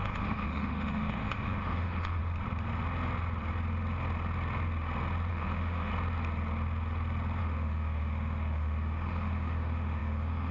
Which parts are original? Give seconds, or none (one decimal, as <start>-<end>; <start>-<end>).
2.2-5.3; 5.9-7.4